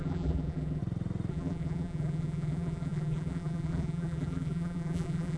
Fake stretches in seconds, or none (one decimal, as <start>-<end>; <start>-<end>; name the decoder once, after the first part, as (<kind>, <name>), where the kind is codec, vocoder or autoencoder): 0.0-0.8 (vocoder, BigVGAN v2); 1.3-5.4